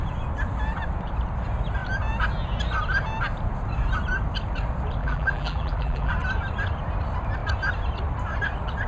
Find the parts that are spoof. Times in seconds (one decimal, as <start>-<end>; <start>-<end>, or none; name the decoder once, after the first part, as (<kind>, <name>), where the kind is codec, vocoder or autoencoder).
5.0-6.1 (vocoder, BigVGAN v2)